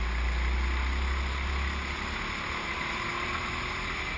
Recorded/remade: recorded